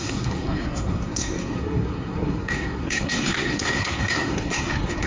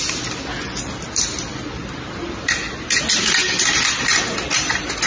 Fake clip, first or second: first